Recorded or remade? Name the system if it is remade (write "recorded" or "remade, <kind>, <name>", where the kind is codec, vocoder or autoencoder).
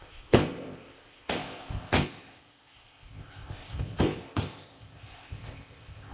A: remade, codec, ZipCodec